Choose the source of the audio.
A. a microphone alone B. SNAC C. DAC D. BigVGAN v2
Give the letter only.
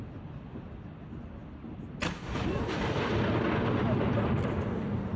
A